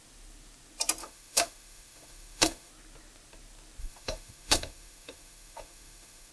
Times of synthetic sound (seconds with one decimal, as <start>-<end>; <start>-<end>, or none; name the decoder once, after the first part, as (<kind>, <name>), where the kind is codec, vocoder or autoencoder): 1.0-2.7 (autoencoder, DAC-VAE); 3.8-6.3